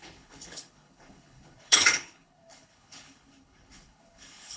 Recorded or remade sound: remade